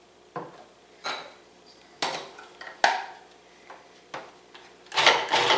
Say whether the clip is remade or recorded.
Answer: recorded